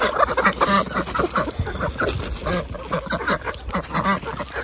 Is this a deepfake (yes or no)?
no